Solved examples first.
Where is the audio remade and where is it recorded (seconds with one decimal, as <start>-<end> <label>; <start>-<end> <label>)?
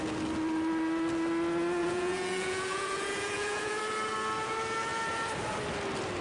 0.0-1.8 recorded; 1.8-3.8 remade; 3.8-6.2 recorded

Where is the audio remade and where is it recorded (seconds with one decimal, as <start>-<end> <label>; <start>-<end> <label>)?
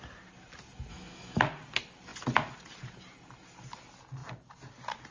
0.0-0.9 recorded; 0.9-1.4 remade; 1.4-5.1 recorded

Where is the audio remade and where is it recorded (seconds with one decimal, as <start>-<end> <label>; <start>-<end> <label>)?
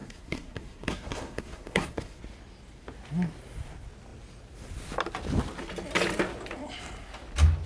0.0-2.2 remade; 2.2-7.7 recorded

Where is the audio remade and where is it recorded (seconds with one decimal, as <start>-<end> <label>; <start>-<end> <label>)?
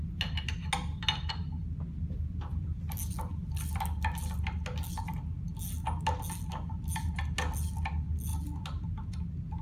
0.0-9.6 recorded